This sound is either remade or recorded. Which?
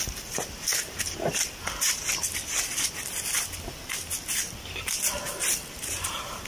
recorded